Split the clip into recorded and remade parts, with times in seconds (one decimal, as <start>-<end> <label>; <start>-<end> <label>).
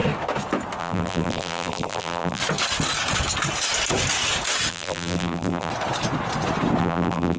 0.0-0.8 recorded; 0.8-2.4 remade; 2.4-4.7 recorded; 4.7-5.7 remade; 5.7-6.8 recorded; 6.8-7.4 remade